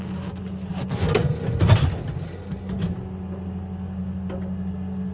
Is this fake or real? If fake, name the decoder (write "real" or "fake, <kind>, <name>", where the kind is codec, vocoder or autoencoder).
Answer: real